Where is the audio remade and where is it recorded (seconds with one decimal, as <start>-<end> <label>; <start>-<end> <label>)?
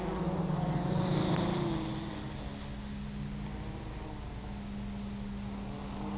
0.0-6.2 recorded